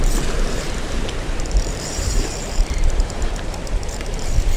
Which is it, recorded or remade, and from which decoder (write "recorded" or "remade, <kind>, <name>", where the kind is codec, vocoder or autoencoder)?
remade, vocoder, BigVGAN v2